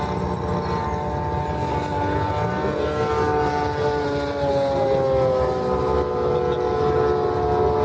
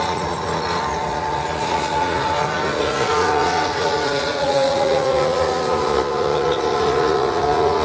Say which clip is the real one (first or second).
first